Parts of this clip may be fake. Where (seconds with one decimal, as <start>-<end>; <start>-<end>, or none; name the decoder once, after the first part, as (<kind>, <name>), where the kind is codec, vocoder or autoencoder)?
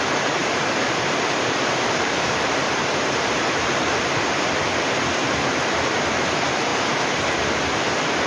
0.4-4.0 (vocoder, BigVGAN v2)